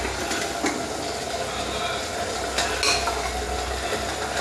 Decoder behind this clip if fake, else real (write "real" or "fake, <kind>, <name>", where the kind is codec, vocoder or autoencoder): real